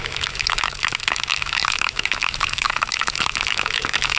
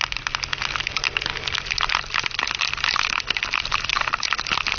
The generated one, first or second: first